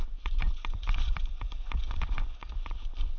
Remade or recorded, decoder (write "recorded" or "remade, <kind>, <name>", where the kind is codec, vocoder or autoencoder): remade, vocoder, Vocos